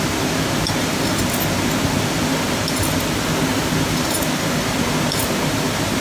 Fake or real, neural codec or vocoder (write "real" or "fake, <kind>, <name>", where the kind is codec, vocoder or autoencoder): real